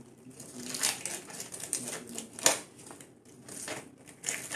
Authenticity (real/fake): real